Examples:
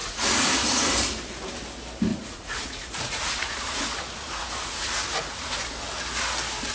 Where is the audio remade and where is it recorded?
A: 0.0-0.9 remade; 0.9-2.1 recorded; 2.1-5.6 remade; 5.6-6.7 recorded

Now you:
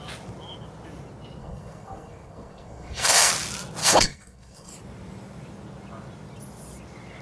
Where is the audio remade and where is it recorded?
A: 0.0-1.4 recorded; 1.4-3.3 remade; 3.3-3.8 recorded; 3.8-4.7 remade; 4.7-7.2 recorded

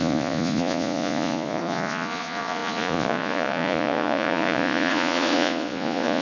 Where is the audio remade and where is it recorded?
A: 0.0-6.2 remade

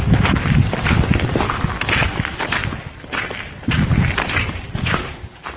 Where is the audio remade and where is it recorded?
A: 0.0-5.6 recorded